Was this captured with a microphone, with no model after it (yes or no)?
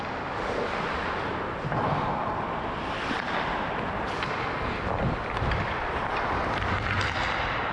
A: no